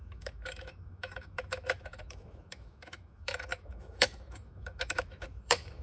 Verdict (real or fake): fake